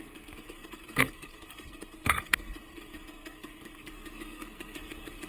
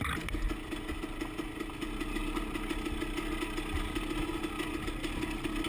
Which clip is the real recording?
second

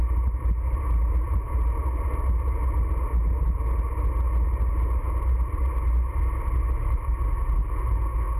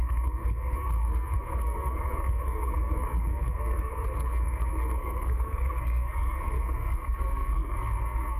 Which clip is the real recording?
first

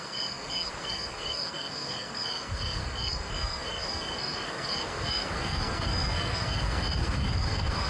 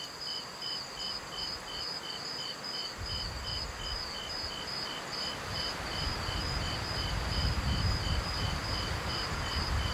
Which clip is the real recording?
second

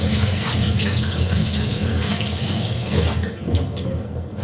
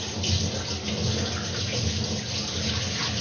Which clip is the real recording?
second